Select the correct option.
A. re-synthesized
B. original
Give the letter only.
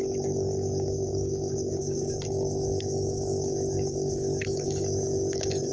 A